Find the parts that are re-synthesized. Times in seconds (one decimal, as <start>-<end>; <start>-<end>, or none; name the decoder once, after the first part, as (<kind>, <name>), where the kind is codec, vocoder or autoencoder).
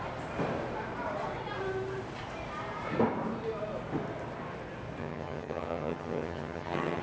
5.0-7.0 (vocoder, HiFi-GAN)